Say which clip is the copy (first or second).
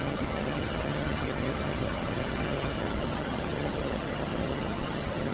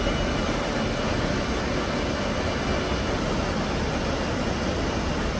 first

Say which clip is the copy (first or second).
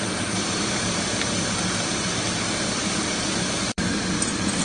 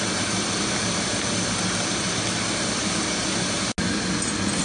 first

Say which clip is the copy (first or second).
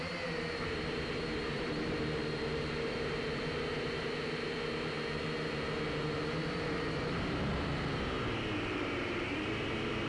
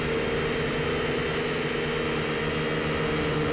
first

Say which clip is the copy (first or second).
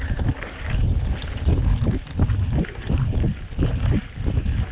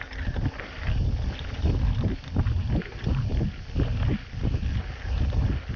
first